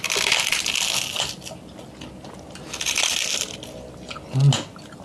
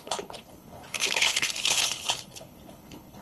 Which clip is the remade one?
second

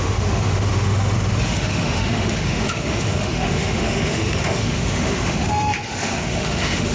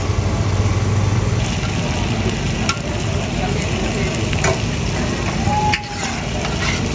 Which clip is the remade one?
first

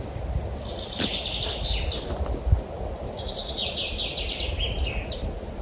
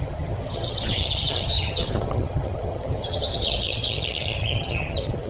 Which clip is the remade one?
second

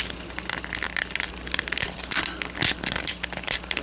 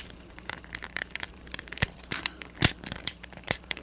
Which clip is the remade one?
second